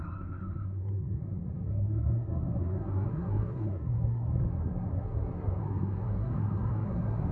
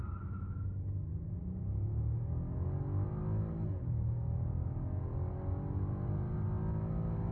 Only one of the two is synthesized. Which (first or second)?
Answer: first